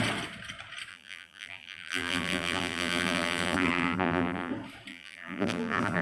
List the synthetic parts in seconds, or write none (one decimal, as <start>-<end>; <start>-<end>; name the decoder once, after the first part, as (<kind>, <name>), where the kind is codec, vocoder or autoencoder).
0.9-4.5 (vocoder, BigVGAN v2); 4.9-6.0